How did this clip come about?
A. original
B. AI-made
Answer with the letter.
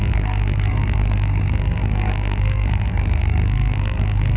B